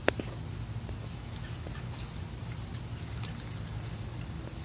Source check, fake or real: real